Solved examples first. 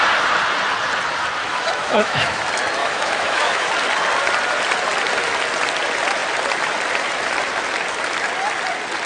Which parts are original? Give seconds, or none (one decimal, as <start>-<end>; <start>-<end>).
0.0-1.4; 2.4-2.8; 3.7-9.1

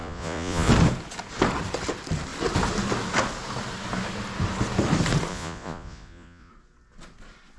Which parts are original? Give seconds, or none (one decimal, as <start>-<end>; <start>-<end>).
0.7-5.3; 6.5-7.6

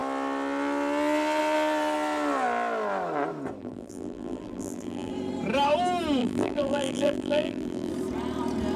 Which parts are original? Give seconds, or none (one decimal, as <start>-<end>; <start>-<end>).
0.0-3.6; 5.1-6.2; 7.9-8.8

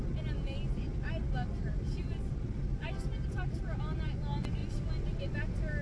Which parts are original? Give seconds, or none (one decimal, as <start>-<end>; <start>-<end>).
0.0-5.8

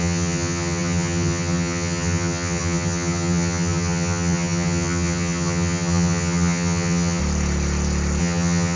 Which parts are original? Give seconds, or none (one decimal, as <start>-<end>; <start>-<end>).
7.2-8.2